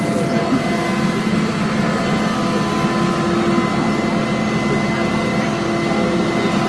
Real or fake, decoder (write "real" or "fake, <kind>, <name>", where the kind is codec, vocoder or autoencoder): real